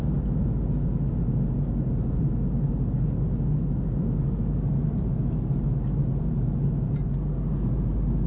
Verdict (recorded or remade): recorded